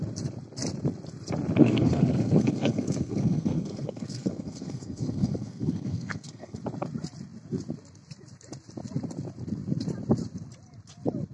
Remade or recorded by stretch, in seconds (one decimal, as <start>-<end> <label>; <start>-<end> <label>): 0.0-1.6 recorded; 1.6-6.6 remade; 6.6-11.3 recorded